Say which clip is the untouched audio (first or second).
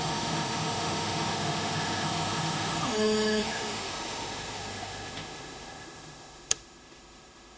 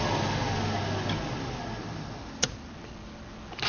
second